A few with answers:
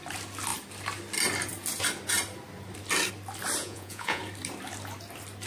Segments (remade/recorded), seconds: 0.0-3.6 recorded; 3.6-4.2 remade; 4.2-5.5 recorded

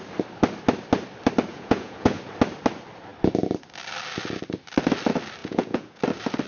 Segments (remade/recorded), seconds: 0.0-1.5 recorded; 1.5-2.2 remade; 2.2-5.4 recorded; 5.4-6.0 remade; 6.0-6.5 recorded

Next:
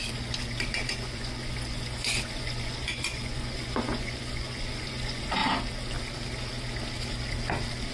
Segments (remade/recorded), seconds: 0.0-5.4 remade; 5.4-7.9 recorded

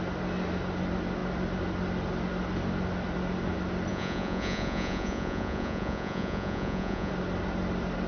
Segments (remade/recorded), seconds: 0.0-3.9 recorded; 3.9-7.1 remade; 7.1-8.1 recorded

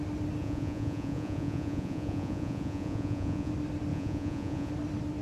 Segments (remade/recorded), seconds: 0.0-0.4 recorded; 0.4-3.5 remade; 3.5-3.9 recorded; 3.9-4.7 remade; 4.7-5.2 recorded

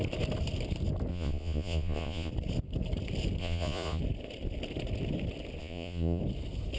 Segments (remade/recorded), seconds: 0.0-1.1 recorded; 1.1-2.3 remade; 2.3-3.4 recorded; 3.4-4.0 remade; 4.0-5.6 recorded; 5.6-6.2 remade; 6.2-6.8 recorded

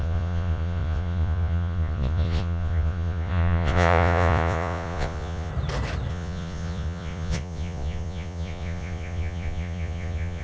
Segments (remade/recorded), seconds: 0.0-5.5 remade; 5.5-6.1 recorded; 6.1-10.4 remade

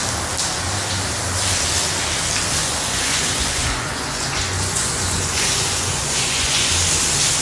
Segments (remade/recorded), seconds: 0.0-2.6 recorded; 2.6-6.7 remade; 6.7-7.4 recorded